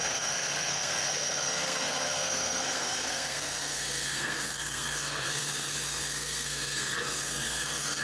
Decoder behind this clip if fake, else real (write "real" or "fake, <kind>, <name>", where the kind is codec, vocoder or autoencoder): fake, codec, SNAC